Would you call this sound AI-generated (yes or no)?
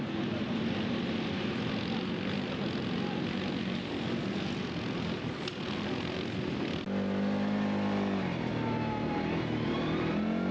no